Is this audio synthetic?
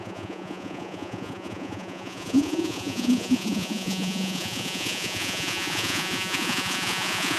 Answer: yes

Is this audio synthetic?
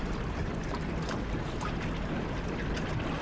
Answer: no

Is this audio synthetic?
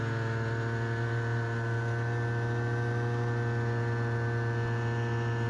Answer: no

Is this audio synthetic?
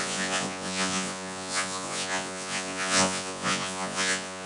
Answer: yes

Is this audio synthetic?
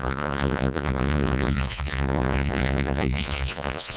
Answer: yes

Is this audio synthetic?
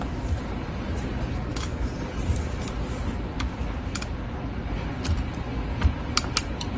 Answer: no